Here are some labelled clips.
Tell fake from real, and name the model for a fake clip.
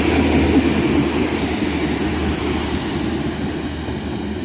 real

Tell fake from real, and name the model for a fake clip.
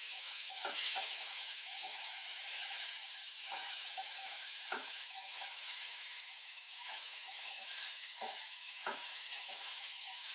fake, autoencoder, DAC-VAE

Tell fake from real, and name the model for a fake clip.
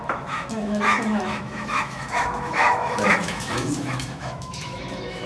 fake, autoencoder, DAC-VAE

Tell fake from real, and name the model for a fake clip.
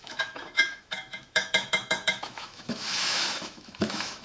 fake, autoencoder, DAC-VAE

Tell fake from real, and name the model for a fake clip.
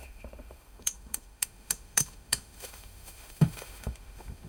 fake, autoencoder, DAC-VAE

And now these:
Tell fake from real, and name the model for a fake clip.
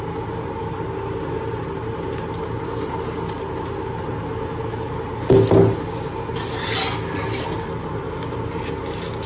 real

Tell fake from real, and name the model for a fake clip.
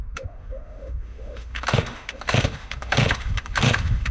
fake, autoencoder, DAC-VAE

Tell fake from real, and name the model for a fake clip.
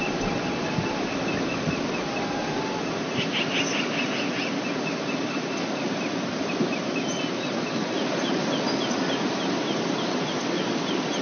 real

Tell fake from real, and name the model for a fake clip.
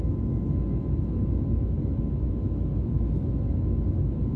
fake, autoencoder, DAC-VAE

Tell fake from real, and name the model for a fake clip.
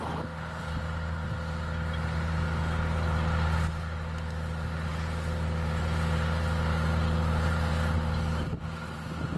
real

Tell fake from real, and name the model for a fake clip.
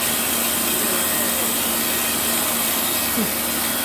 real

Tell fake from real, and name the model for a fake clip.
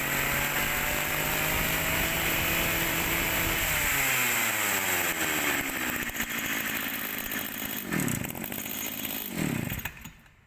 real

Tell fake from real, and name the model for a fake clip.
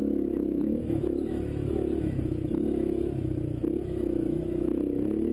fake, autoencoder, DAC-VAE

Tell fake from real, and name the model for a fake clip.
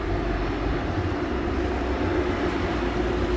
real